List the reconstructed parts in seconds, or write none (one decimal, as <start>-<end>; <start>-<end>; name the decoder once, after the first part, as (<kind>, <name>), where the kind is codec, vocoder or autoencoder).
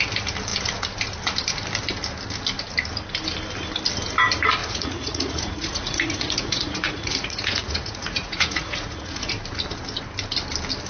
4.6-9.3 (vocoder, Vocos)